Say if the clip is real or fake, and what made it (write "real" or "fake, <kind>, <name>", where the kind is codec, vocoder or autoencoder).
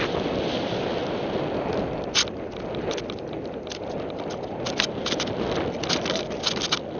real